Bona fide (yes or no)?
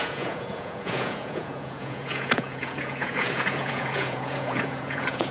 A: no